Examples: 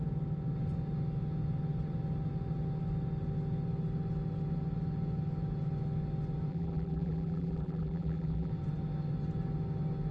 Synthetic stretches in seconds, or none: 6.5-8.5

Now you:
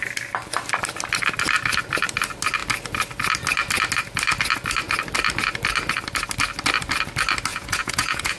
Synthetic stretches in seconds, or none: 7.5-8.4

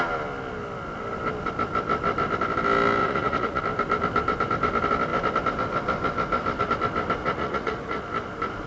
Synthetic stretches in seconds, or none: 3.0-3.6; 7.2-8.0